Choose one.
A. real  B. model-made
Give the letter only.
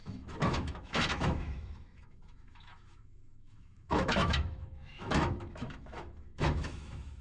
B